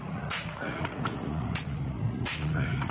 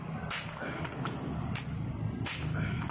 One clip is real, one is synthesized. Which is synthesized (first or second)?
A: first